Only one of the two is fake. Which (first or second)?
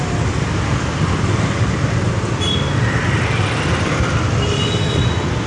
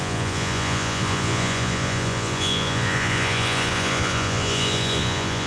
second